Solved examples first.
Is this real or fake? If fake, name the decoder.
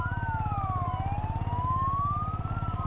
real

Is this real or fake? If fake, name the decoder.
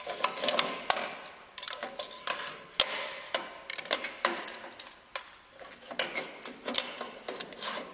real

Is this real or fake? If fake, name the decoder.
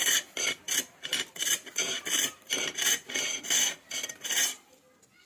real